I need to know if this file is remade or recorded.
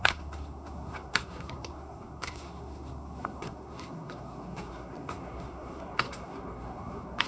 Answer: remade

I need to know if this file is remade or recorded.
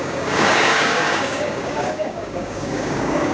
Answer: remade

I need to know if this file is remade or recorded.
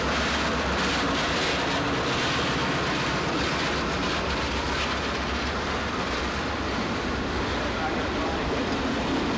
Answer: recorded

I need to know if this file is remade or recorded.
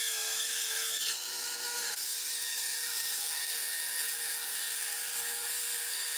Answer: remade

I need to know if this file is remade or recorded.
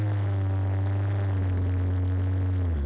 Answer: recorded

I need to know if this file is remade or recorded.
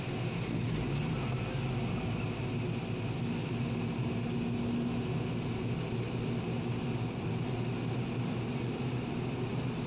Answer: recorded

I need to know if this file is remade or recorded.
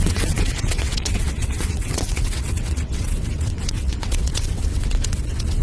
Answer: remade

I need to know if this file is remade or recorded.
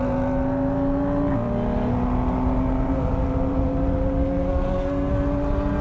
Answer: recorded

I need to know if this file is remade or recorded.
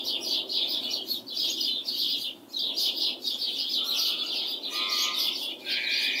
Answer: recorded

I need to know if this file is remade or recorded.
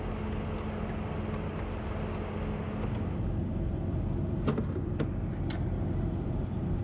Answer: recorded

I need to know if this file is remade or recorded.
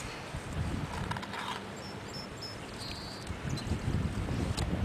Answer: recorded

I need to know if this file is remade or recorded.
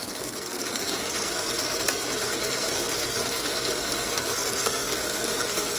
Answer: remade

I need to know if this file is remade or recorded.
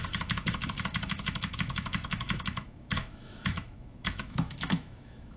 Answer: remade